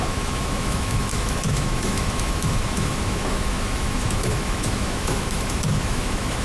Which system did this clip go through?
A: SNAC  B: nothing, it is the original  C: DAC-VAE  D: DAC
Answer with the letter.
C